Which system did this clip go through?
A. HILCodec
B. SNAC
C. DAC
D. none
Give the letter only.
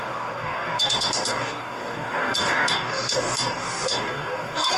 C